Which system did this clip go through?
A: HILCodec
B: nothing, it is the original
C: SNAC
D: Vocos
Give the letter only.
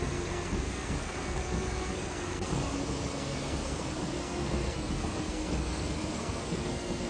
C